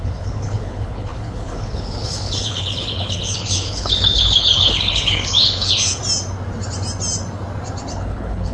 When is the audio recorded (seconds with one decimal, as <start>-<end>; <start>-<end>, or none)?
6.0-7.9